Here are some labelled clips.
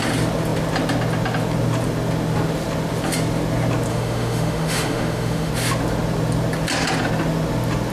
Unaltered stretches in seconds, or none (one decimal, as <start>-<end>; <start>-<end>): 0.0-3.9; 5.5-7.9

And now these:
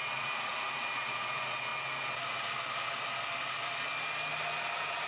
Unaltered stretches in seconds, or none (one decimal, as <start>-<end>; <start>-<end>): 1.7-5.1

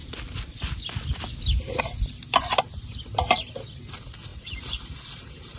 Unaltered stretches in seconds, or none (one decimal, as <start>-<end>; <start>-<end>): 0.0-4.3

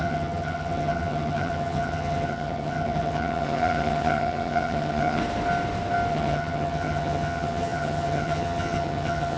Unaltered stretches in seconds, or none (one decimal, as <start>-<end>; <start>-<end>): 5.2-6.1

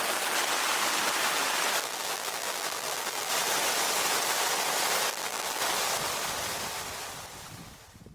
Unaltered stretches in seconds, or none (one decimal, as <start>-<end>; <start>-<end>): 0.0-1.8; 3.3-5.1; 5.6-8.1

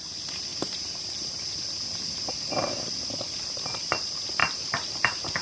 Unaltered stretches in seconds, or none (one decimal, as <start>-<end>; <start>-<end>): 0.0-4.4

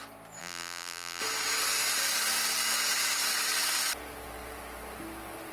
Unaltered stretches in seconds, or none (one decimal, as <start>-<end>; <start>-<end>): 0.0-0.4; 1.2-5.5

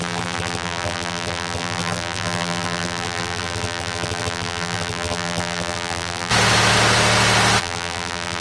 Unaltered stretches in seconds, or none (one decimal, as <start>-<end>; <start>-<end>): 6.3-7.6